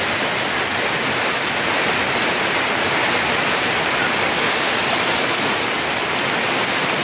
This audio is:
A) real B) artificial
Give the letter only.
A